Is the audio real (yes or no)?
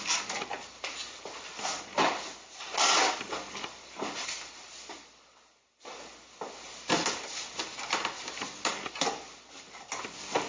yes